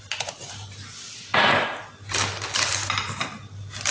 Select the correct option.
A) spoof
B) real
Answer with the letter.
B